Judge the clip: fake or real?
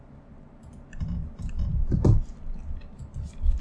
real